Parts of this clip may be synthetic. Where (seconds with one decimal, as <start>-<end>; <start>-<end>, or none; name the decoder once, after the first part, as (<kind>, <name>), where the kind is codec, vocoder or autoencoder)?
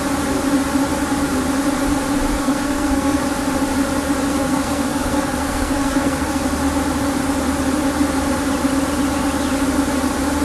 2.4-3.2 (codec, SNAC); 4.3-6.4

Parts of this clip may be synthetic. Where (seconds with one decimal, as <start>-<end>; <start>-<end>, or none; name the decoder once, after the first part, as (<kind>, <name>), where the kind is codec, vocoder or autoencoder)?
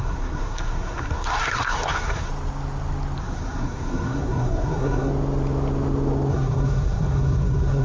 0.0-2.3 (codec, SNAC); 3.2-5.1; 6.3-7.8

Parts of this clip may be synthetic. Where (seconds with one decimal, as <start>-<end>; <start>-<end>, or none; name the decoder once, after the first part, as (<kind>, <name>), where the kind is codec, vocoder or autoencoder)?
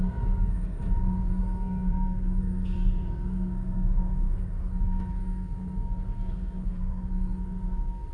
0.0-0.8 (codec, SNAC); 1.4-8.1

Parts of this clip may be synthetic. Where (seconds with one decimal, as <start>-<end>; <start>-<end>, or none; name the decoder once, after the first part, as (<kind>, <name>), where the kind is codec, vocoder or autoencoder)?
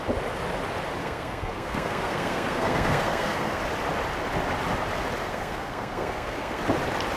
1.0-3.6 (codec, SNAC); 5.2-6.6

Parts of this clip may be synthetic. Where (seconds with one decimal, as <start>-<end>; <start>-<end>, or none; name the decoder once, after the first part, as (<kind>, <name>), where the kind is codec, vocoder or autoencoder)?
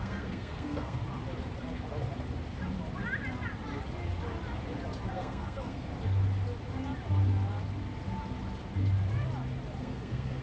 0.0-1.0 (codec, SNAC); 5.1-5.9; 9.8-10.4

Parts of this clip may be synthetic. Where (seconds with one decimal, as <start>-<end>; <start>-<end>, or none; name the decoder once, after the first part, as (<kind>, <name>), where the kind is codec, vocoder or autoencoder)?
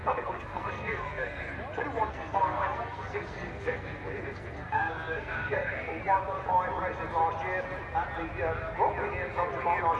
0.0-1.4 (codec, SNAC); 2.1-6.0